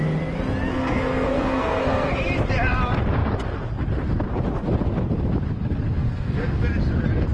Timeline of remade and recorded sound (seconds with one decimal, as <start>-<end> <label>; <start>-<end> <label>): 0.0-0.7 recorded; 0.7-2.1 remade; 2.1-6.0 recorded; 6.0-6.6 remade; 6.6-7.3 recorded

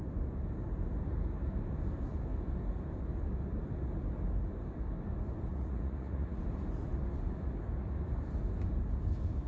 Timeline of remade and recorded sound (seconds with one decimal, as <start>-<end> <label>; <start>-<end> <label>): 0.0-5.5 recorded; 5.5-6.4 remade; 6.4-9.5 recorded

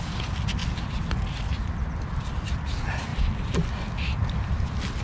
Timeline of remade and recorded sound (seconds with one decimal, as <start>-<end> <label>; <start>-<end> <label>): 0.0-5.0 recorded

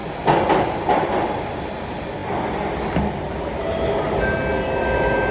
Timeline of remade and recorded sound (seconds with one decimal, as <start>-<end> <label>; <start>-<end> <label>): 0.0-5.3 recorded

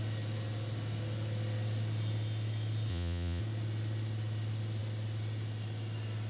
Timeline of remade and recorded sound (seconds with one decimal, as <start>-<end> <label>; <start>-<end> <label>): 0.0-2.9 recorded; 2.9-3.4 remade; 3.4-6.3 recorded

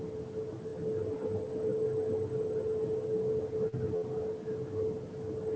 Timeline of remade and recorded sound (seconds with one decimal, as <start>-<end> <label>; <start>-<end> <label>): 0.0-5.6 recorded